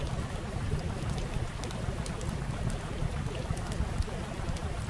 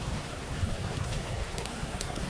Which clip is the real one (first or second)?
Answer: first